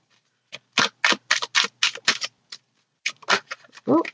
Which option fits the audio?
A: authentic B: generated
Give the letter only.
A